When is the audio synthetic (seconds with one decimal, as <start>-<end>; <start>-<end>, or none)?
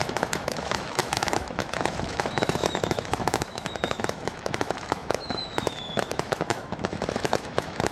0.0-7.9